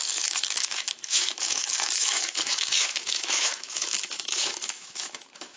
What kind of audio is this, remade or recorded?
remade